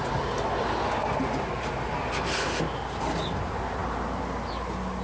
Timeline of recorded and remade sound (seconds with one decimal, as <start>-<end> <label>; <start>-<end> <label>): 0.0-5.0 recorded

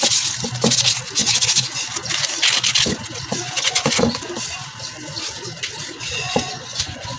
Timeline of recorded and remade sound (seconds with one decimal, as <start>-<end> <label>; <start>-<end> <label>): 0.0-1.2 recorded; 1.2-1.8 remade; 1.8-3.3 recorded; 3.3-4.3 remade; 4.3-6.2 recorded; 6.2-7.2 remade

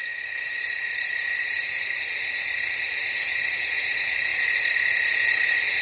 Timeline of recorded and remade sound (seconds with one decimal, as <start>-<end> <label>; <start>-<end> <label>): 0.0-3.5 recorded; 3.5-4.3 remade; 4.3-5.8 recorded

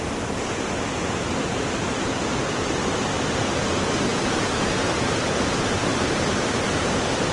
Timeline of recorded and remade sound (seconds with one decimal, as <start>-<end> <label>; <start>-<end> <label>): 0.0-4.1 recorded; 4.1-4.8 remade; 4.8-7.3 recorded

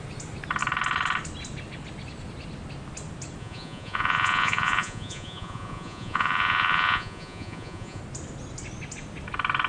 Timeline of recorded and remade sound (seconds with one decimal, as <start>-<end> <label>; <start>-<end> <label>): 0.0-3.4 recorded; 3.4-8.0 remade; 8.0-9.7 recorded

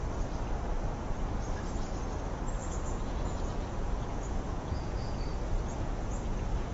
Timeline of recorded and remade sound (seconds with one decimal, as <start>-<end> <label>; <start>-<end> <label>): 0.0-2.6 recorded; 2.6-6.7 remade